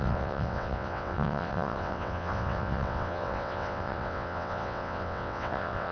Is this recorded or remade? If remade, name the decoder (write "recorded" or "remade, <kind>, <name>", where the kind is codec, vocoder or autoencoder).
remade, vocoder, WaveNeXt